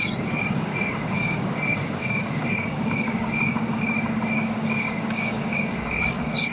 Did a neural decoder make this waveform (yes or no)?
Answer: yes